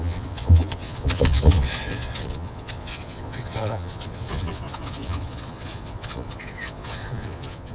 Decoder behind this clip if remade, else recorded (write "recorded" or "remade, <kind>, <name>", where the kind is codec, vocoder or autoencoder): remade, vocoder, Vocos